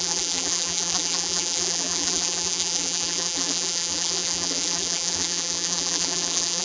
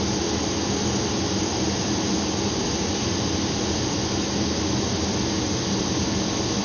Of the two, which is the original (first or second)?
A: second